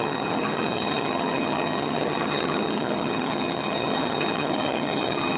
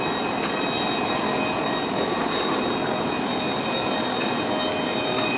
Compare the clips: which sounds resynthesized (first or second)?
first